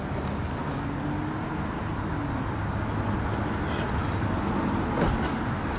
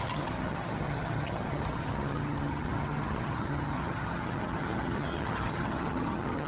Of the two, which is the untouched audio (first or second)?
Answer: first